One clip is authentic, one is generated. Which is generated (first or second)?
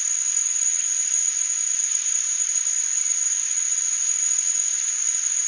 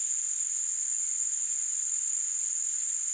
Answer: first